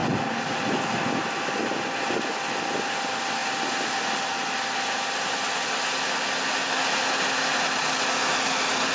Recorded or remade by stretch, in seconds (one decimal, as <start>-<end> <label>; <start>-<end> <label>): 0.0-1.6 remade; 1.6-8.9 recorded